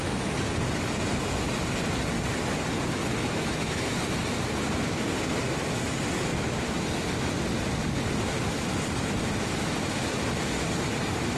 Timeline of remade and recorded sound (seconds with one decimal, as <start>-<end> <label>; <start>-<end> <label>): 0.0-3.2 recorded; 3.2-3.7 remade; 3.7-11.4 recorded